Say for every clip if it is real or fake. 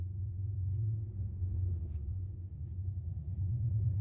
fake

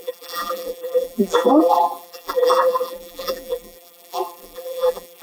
fake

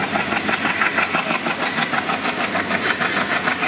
real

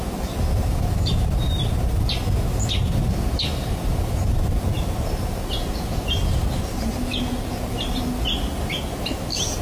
real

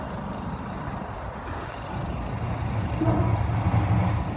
real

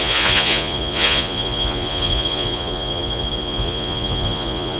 fake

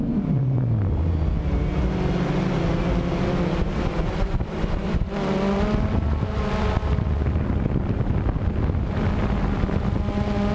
real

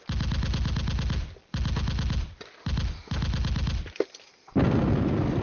real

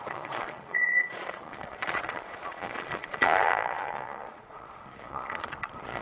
fake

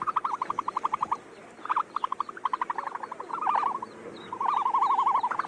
real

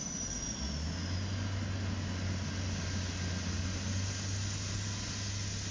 real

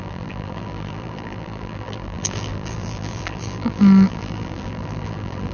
fake